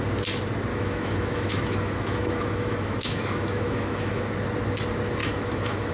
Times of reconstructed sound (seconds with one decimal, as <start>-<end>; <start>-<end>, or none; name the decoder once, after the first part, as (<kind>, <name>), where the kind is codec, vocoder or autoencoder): 0.7-4.2 (autoencoder, DAC-VAE); 5.2-5.9

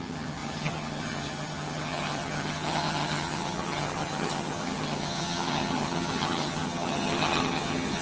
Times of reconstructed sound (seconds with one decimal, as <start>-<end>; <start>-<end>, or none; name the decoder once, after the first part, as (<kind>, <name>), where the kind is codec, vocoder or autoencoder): 0.0-8.0 (vocoder, HiFi-GAN)